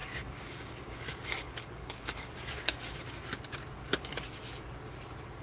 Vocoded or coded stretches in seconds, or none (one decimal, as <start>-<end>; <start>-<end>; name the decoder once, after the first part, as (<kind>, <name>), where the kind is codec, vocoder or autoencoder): 0.0-3.2 (codec, DAC)